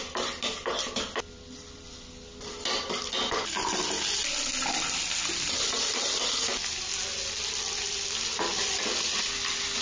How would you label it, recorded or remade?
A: recorded